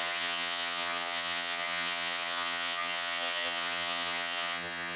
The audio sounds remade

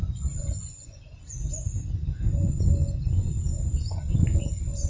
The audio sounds remade